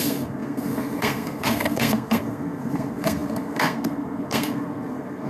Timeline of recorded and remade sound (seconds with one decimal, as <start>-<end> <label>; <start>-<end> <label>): 0.0-5.3 remade